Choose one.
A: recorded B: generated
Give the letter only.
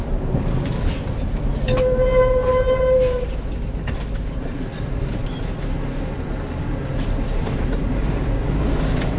A